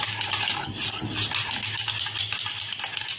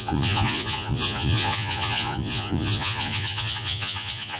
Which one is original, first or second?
first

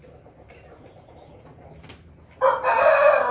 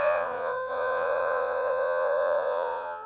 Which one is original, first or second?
first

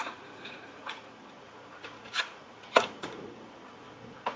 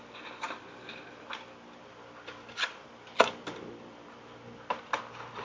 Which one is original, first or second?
second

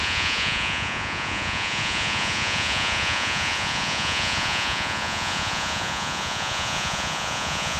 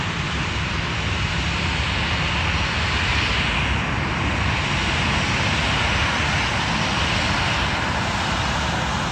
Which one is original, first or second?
second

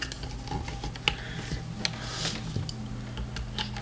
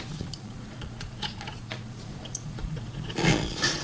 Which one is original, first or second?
first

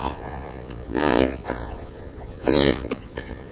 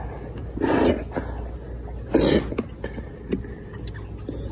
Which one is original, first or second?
second